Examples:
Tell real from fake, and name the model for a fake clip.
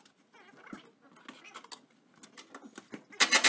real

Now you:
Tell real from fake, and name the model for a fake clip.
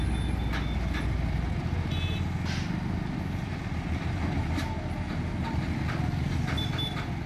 real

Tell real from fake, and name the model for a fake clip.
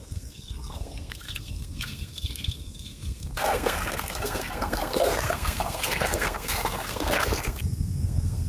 fake, codec, SNAC